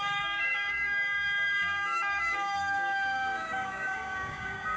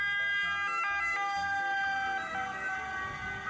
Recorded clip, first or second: second